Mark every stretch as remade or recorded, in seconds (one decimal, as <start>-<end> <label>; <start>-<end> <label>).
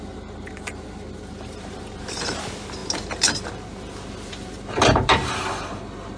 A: 0.0-6.2 recorded